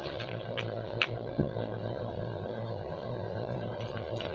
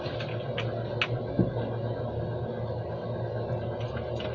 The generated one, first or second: first